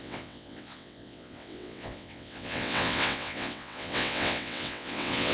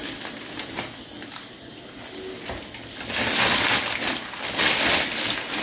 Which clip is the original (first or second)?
second